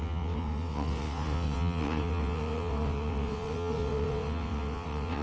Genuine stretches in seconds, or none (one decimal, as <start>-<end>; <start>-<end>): none